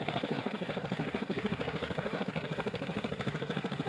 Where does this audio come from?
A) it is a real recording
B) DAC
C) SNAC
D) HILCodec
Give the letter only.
C